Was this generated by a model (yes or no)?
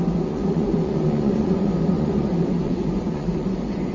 yes